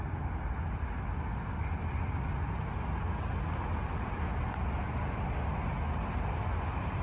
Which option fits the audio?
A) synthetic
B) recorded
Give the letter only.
B